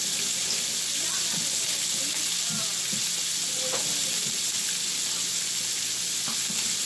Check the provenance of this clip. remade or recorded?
recorded